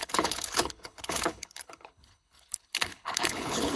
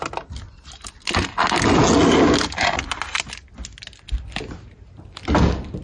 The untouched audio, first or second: second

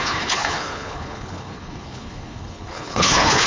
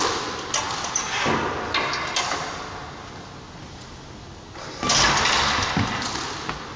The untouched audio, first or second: second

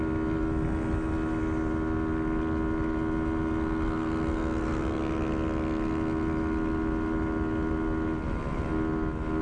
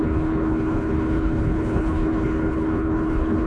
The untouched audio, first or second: first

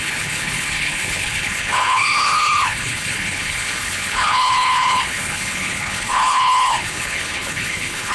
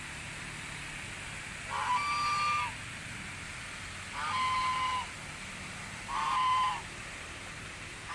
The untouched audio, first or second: second